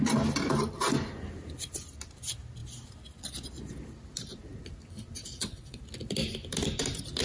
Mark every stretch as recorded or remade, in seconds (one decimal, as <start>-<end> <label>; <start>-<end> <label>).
0.0-5.2 recorded; 5.2-5.8 remade; 5.8-7.2 recorded